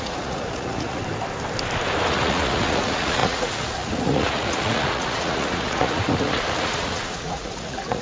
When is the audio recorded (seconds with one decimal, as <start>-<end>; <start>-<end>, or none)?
1.0-2.1